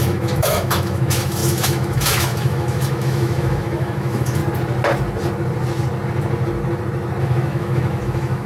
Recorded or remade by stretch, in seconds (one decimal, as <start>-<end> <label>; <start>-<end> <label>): 0.0-4.4 remade; 4.4-7.2 recorded; 7.2-8.5 remade